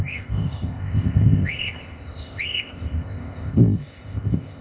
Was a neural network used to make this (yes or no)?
yes